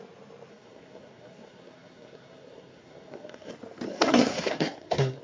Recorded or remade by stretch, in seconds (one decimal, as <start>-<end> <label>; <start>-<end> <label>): 0.0-0.5 recorded; 0.5-3.5 remade; 3.5-3.9 recorded; 3.9-5.2 remade